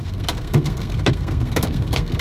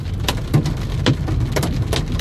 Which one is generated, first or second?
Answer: first